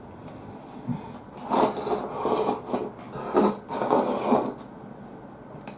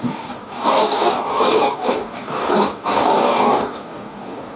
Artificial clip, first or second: second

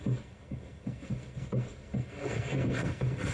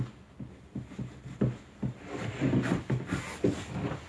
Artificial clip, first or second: first